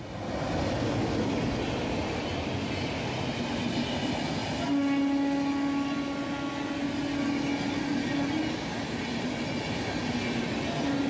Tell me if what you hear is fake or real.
real